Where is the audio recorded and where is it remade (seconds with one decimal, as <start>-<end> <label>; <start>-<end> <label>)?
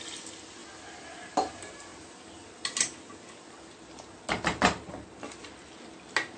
0.0-6.4 recorded